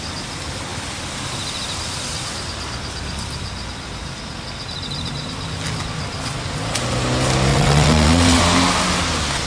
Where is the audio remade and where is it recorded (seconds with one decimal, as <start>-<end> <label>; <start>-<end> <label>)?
0.0-7.5 recorded; 7.5-8.4 remade; 8.4-9.5 recorded